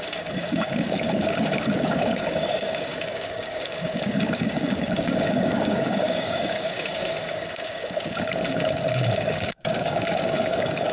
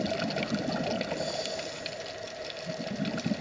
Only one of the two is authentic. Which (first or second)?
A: second